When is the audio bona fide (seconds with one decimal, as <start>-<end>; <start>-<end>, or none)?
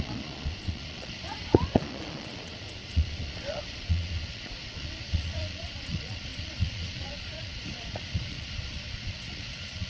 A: none